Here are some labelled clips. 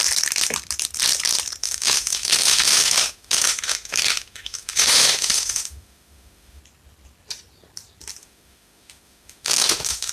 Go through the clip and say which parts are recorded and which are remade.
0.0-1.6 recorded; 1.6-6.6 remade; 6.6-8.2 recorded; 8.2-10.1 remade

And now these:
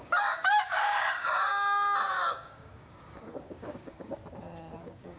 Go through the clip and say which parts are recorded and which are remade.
0.0-1.5 remade; 1.5-2.2 recorded; 2.2-4.2 remade; 4.2-4.8 recorded; 4.8-5.2 remade

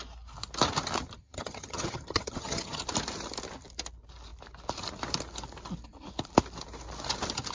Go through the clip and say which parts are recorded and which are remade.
0.0-1.2 recorded; 1.2-2.8 remade; 2.8-7.5 recorded